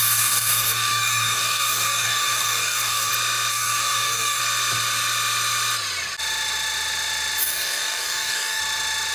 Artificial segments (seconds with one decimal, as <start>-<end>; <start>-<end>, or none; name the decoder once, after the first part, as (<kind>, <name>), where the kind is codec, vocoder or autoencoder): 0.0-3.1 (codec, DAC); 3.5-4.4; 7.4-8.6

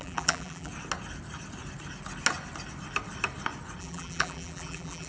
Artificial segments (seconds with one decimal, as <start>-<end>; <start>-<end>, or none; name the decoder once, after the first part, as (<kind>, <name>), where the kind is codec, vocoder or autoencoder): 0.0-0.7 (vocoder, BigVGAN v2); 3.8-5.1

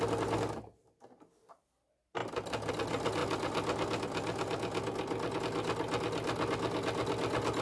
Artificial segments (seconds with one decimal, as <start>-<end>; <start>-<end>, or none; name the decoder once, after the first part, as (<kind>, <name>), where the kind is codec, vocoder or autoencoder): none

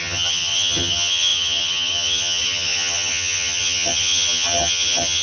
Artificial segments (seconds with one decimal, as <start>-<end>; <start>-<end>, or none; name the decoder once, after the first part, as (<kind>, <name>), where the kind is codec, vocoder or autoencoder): 0.0-5.2 (vocoder, HiFi-GAN)